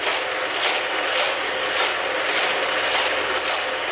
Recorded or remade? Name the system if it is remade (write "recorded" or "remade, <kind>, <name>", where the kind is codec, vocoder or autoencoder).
recorded